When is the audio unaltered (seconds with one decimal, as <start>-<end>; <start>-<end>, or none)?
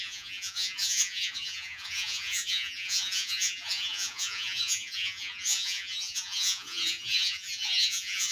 none